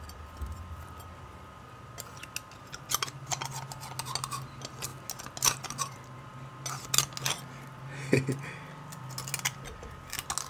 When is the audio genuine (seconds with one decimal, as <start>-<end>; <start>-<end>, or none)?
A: 0.0-10.5